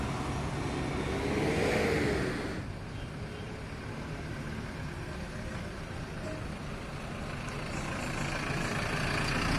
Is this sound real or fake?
real